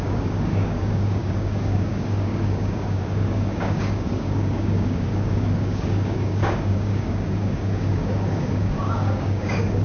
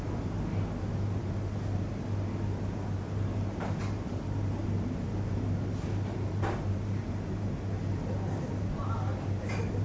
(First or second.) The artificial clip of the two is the first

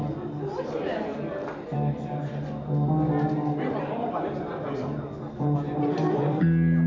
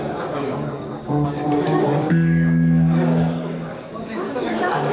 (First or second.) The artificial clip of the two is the second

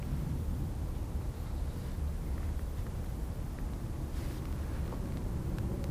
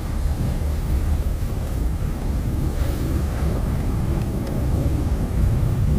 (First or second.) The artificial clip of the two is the second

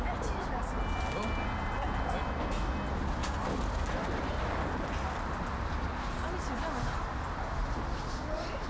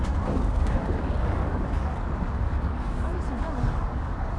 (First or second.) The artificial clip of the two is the second